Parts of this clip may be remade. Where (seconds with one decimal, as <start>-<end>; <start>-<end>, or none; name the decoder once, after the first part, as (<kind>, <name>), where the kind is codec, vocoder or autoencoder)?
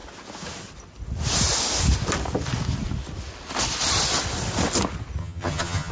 5.2-5.9 (vocoder, HiFi-GAN)